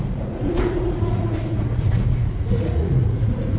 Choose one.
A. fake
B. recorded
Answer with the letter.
A